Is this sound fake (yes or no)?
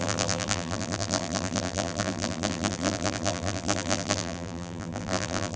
yes